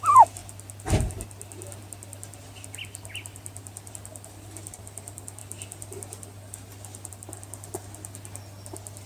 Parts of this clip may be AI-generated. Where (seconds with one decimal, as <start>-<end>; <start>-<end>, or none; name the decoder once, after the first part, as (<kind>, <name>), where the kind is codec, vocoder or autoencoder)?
0.0-5.4 (vocoder, BigVGAN v2); 7.1-9.1